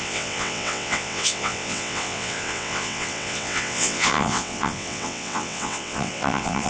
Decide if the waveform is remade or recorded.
remade